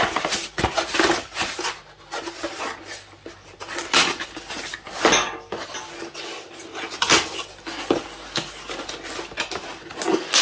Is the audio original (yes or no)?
yes